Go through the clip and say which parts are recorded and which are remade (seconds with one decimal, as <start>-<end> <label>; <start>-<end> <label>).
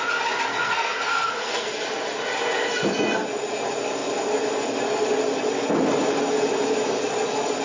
0.0-0.5 recorded; 0.5-1.7 remade; 1.7-7.6 recorded